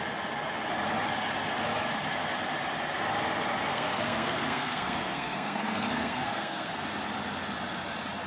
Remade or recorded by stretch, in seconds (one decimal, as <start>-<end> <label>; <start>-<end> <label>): 0.0-3.7 recorded; 3.7-6.7 remade; 6.7-8.3 recorded